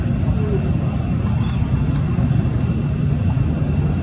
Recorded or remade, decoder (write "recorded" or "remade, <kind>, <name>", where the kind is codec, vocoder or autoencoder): recorded